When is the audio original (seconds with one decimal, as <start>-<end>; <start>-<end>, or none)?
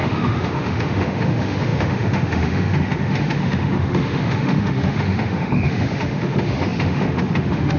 none